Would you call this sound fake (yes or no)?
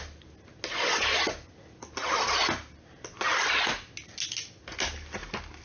no